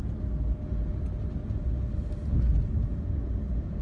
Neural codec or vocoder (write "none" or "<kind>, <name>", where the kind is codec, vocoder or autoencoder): none